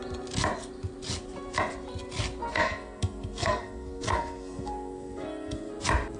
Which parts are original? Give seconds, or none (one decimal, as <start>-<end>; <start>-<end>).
0.0-2.5; 5.7-6.2